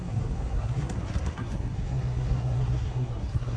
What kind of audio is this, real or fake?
fake